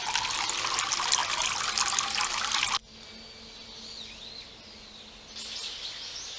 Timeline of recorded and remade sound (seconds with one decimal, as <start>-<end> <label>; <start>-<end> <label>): 0.0-6.4 recorded